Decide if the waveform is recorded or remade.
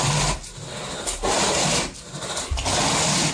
recorded